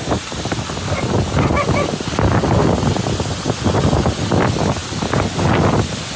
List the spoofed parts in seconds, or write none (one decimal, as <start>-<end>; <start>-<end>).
none

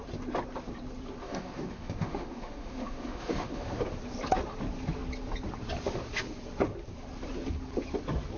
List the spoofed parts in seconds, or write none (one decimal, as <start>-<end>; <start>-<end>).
1.2-3.8

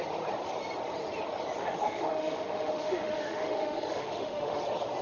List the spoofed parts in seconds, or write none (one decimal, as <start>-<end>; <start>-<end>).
1.6-4.6

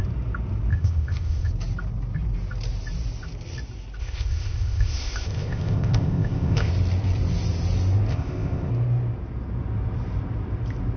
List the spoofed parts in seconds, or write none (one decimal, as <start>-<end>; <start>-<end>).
0.7-1.5; 4.0-6.7; 8.1-8.7

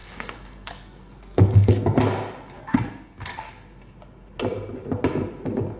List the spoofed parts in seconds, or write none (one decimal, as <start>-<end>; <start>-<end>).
0.0-1.7; 2.6-3.5

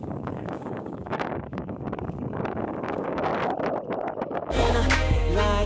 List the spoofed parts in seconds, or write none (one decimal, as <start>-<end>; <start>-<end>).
0.0-3.3; 4.2-5.7